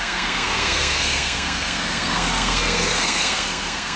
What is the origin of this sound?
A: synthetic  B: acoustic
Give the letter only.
A